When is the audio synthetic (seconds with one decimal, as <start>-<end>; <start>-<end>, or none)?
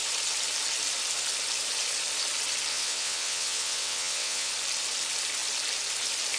2.7-4.5